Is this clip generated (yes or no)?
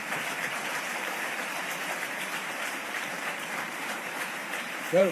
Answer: yes